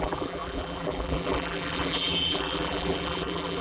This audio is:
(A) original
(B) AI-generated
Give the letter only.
B